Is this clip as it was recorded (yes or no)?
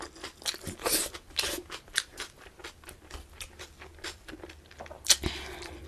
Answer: yes